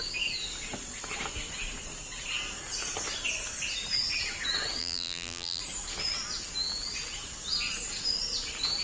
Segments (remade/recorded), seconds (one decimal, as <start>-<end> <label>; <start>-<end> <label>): 0.0-4.8 recorded; 4.8-5.6 remade; 5.6-8.8 recorded